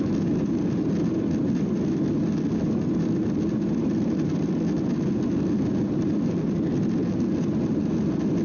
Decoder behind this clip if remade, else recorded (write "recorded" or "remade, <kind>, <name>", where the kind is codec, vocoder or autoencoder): recorded